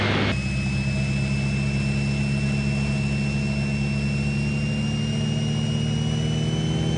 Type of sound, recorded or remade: recorded